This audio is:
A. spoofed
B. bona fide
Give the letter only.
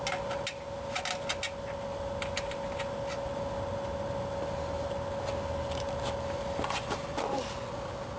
B